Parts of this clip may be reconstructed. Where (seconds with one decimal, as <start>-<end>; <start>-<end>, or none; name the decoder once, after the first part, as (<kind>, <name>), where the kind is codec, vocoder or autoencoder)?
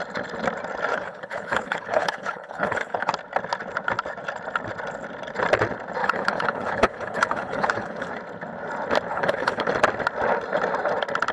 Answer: 0.9-3.1 (codec, HILCodec); 6.0-8.1; 9.1-9.7